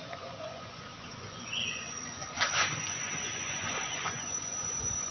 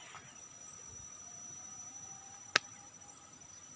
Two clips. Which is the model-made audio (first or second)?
first